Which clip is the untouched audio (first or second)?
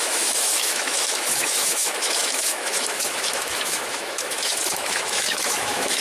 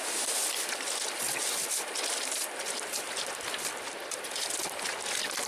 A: second